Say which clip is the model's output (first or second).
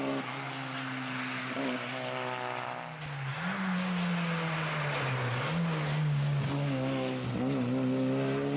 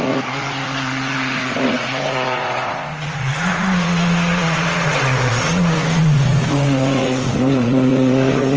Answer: second